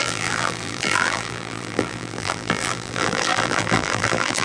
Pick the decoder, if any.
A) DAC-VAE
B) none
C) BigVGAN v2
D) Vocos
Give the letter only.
C